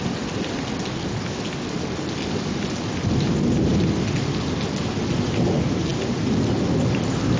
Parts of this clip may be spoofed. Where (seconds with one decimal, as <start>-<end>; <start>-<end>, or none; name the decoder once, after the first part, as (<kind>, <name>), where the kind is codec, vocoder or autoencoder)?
none

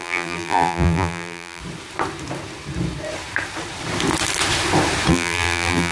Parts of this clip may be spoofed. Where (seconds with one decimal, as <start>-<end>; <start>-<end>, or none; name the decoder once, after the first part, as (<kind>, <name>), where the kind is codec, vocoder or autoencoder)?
0.0-1.6 (vocoder, BigVGAN v2); 5.1-5.9

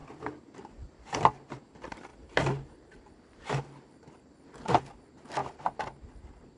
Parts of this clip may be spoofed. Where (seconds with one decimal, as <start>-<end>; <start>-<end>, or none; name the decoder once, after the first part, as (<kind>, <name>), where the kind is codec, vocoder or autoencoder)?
2.1-3.1 (vocoder, BigVGAN v2)

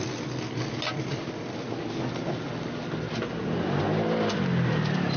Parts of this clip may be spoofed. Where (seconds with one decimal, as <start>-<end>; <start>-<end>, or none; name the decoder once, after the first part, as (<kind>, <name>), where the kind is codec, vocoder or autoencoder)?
none